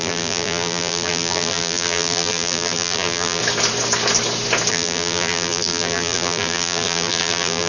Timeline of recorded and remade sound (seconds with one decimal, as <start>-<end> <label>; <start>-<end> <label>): 0.0-3.4 remade; 3.4-4.7 recorded; 4.7-7.7 remade